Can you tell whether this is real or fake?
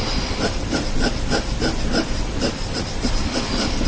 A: fake